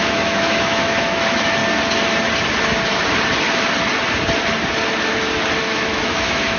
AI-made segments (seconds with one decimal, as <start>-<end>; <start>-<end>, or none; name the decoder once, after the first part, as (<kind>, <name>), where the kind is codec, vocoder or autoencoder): 0.0-1.6 (autoencoder, DAC-VAE); 5.6-6.6